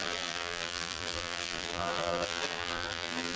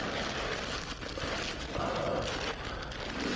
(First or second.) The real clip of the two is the second